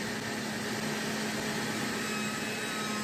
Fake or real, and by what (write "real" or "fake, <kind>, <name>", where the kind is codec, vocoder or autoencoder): real